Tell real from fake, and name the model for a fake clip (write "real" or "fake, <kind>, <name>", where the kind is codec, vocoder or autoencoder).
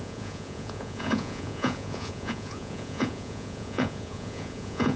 fake, vocoder, Vocos